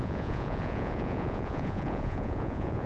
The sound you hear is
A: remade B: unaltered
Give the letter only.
A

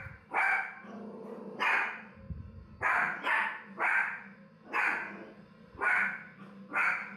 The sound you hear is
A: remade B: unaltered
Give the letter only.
B